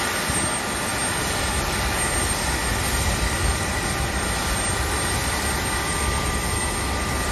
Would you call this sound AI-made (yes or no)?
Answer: no